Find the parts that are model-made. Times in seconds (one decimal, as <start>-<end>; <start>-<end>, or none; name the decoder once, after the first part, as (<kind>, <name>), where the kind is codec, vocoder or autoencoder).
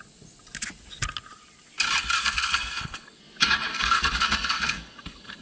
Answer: 2.2-3.2 (codec, SNAC); 3.7-5.4